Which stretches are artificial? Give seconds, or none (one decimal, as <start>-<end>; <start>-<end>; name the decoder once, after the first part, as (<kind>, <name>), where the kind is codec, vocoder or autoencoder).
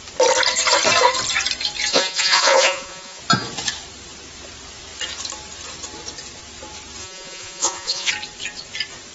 1.9-3.2 (vocoder, Vocos); 7.0-8.1